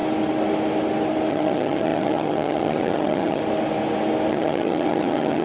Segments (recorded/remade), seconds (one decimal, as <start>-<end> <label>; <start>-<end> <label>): 0.0-1.3 recorded; 1.3-3.4 remade; 3.4-4.3 recorded; 4.3-5.4 remade